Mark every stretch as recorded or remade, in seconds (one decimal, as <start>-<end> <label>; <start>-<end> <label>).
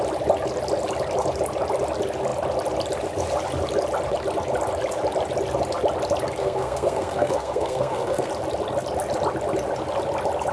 0.0-6.4 recorded; 6.4-8.3 remade; 8.3-10.5 recorded